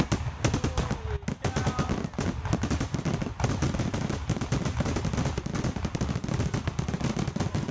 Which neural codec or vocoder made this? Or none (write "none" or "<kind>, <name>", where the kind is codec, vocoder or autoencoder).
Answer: none